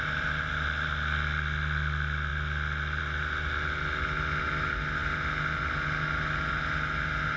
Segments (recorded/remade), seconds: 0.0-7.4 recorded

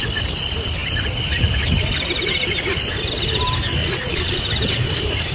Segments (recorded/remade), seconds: 0.0-3.8 recorded; 3.8-4.4 remade; 4.4-5.3 recorded

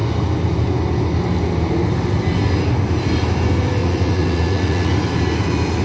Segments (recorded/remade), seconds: 0.0-3.8 recorded; 3.8-4.9 remade; 4.9-5.8 recorded